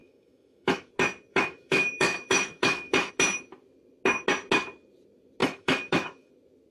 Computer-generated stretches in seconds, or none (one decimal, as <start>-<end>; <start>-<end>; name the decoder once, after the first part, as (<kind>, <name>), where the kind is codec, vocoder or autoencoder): 0.0-0.9 (autoencoder, DAC-VAE); 1.3-3.1; 5.4-6.3